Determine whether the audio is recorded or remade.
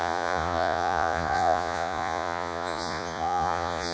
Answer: remade